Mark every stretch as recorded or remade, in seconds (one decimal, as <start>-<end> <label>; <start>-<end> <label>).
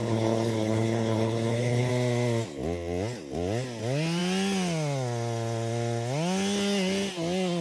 0.0-1.9 remade; 1.9-7.6 recorded